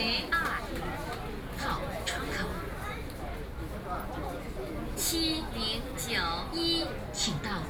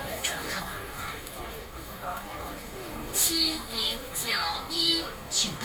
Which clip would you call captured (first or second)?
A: first